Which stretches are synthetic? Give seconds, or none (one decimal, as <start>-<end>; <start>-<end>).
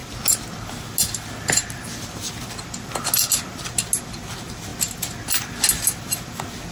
none